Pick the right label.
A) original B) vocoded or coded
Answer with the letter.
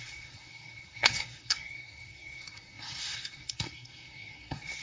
B